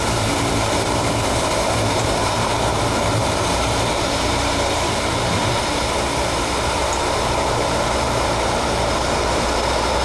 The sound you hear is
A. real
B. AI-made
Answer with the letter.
B